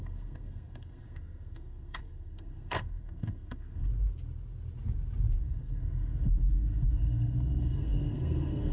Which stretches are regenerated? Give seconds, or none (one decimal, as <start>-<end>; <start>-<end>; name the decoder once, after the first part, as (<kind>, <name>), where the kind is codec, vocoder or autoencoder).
0.0-3.9 (codec, SNAC); 5.4-8.7

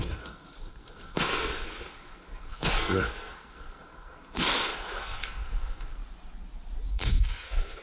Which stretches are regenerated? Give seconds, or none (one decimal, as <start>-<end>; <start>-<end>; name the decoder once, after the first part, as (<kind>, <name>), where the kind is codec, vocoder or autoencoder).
0.0-6.0 (codec, SNAC); 6.9-7.8

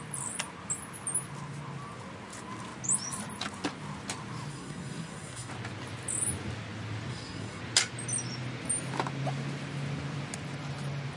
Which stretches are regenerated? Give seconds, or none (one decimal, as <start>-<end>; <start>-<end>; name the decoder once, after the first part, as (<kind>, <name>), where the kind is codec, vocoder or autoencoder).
4.5-5.5 (codec, SNAC); 7.1-7.6

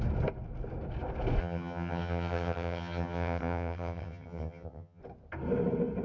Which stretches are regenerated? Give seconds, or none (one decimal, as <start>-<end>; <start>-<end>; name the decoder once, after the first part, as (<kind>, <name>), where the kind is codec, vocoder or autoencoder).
1.4-5.0 (vocoder, HiFi-GAN)

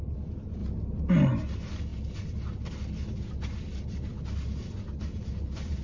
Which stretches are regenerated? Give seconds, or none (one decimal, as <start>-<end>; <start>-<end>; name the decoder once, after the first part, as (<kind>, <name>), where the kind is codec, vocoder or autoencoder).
none

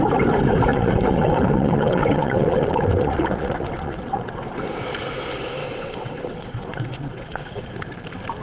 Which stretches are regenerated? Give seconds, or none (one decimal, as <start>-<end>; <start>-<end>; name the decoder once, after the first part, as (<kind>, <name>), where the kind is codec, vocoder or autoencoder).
0.7-4.6 (vocoder, WaveNeXt); 5.6-7.6